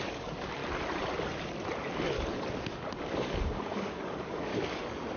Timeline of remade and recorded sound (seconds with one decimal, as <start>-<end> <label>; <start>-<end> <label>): 0.0-0.6 remade; 0.6-2.7 recorded; 2.7-4.5 remade; 4.5-5.2 recorded